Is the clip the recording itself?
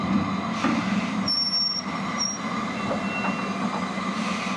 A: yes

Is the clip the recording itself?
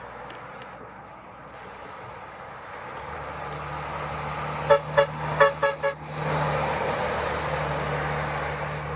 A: yes